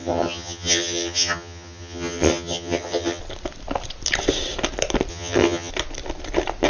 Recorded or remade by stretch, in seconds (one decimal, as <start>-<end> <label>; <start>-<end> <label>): 0.0-3.2 remade; 3.2-5.1 recorded; 5.1-5.7 remade; 5.7-6.7 recorded